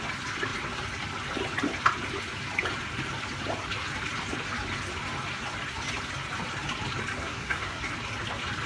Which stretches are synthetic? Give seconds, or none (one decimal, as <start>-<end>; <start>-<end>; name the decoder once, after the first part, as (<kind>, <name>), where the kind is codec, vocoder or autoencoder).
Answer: 7.2-7.8 (codec, SNAC)